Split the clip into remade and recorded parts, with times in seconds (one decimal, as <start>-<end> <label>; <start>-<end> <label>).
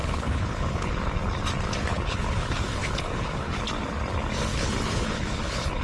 0.0-0.9 remade; 0.9-1.9 recorded; 1.9-3.5 remade; 3.5-4.5 recorded; 4.5-5.8 remade